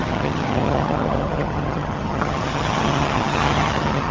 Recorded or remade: remade